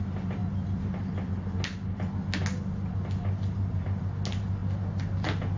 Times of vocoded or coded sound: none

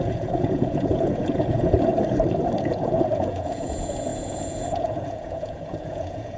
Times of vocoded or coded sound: 0.0-1.9; 2.6-6.4

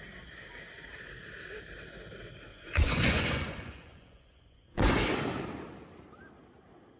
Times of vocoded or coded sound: 2.5-5.2

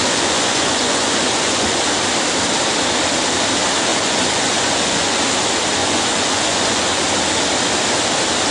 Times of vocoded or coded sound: 0.0-1.8; 3.9-5.2; 5.8-7.0

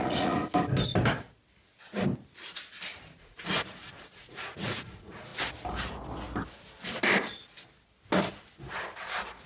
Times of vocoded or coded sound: 0.0-0.4; 3.2-5.3

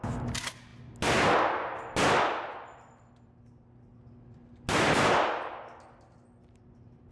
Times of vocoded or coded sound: none